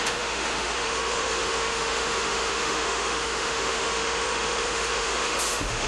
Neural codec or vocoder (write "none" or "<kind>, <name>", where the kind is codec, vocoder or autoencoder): autoencoder, DAC-VAE